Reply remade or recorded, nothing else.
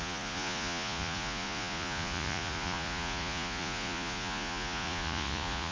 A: remade